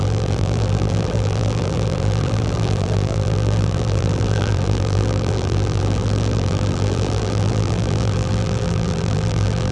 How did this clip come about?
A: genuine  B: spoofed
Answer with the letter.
B